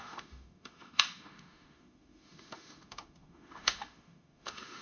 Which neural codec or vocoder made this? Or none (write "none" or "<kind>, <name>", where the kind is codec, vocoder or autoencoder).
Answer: autoencoder, DAC-VAE